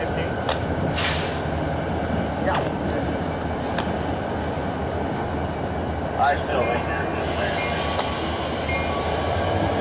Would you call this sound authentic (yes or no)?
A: yes